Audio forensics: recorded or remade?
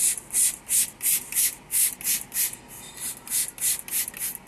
recorded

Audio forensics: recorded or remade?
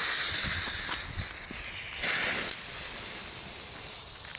recorded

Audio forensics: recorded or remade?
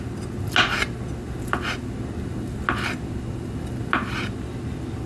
recorded